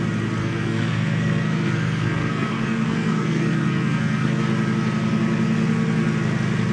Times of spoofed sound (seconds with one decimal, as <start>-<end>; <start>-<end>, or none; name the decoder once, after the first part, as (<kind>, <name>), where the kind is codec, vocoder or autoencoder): 0.4-4.4 (codec, SNAC)